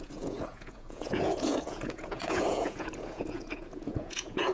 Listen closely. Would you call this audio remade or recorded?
remade